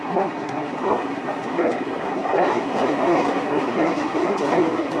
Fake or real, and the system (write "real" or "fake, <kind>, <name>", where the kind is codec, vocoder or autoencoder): fake, codec, SNAC